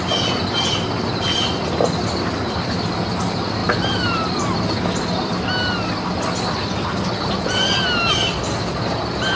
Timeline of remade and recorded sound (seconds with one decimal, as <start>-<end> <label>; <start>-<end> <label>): 0.0-9.4 recorded